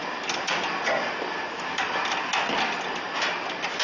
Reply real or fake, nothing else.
real